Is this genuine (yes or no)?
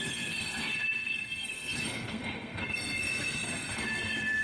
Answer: no